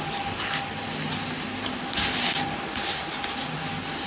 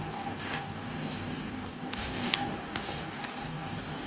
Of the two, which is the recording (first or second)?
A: first